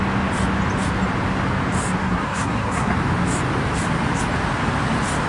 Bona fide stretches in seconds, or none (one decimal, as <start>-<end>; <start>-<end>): 0.0-2.0; 2.9-5.3